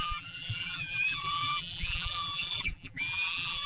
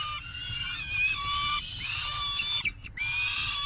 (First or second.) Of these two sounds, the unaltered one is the second